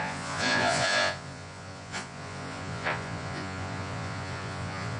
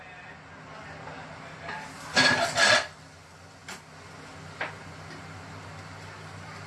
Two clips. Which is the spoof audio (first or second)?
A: first